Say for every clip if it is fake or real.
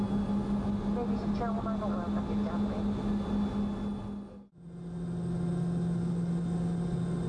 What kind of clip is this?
real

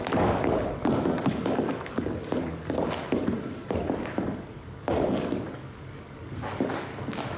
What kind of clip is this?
fake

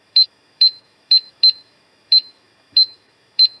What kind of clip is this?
fake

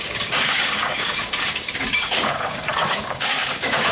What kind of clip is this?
fake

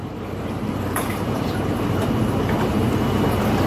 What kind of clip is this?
fake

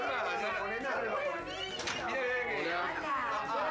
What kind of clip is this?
real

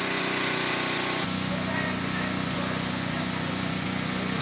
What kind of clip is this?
fake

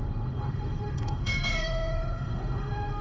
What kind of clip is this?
fake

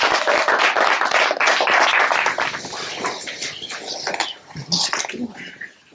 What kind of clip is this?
real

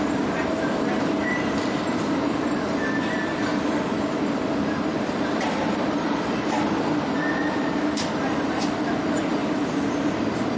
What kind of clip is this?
fake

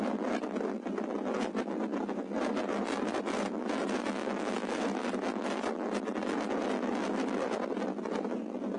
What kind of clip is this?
real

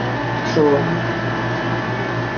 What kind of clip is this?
real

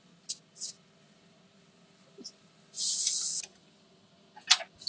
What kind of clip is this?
real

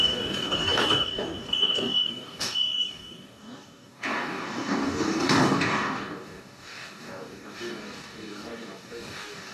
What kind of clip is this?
fake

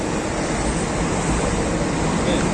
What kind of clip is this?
fake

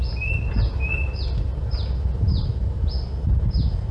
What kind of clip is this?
real